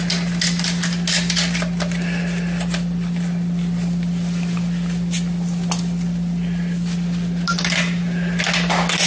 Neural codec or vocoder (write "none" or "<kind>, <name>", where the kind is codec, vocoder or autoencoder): none